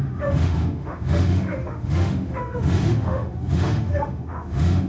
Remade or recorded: remade